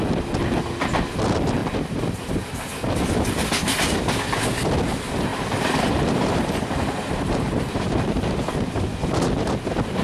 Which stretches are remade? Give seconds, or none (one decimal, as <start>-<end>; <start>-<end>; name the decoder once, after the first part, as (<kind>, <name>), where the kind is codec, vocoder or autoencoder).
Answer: 1.6-2.3 (vocoder, BigVGAN v2); 5.3-8.2